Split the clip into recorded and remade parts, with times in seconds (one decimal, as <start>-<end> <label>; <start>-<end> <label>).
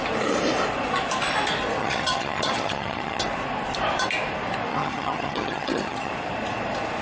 0.0-1.8 recorded; 1.8-3.2 remade; 3.2-4.7 recorded; 4.7-6.1 remade; 6.1-7.0 recorded